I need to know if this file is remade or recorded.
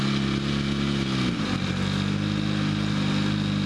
recorded